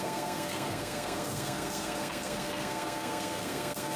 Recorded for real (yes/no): no